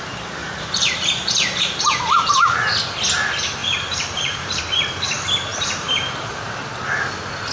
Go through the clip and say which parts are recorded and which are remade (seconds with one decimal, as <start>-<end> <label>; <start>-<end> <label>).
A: 0.0-0.4 recorded; 0.4-1.8 remade; 1.8-3.6 recorded; 3.6-4.6 remade; 4.6-5.5 recorded; 5.5-6.6 remade; 6.6-7.5 recorded